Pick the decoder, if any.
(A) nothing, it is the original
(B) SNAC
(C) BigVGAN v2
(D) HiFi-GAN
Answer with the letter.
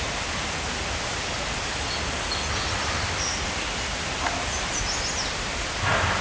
A